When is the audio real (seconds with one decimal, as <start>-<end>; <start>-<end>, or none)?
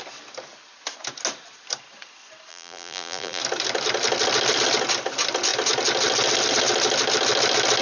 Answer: 0.0-2.5; 3.4-7.8